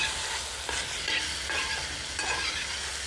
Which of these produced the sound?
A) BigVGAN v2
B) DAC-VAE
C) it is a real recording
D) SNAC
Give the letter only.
C